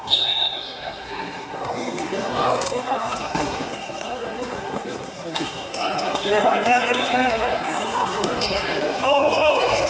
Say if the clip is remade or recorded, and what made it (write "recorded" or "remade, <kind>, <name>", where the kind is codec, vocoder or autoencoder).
remade, codec, SNAC